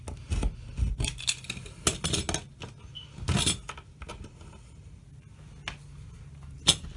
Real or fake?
real